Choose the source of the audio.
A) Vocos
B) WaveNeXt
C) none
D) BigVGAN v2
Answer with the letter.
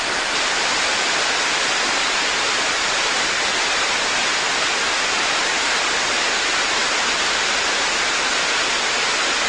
C